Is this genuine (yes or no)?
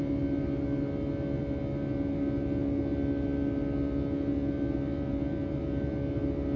yes